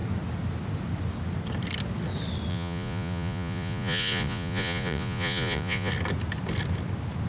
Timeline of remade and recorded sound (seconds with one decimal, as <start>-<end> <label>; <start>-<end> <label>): 0.0-2.5 recorded; 2.5-5.9 remade; 5.9-7.3 recorded